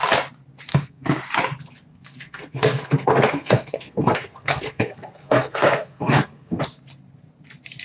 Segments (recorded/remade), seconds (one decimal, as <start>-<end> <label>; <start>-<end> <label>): 0.0-0.7 recorded; 0.7-1.2 remade; 1.2-1.9 recorded; 1.9-6.6 remade; 6.6-7.8 recorded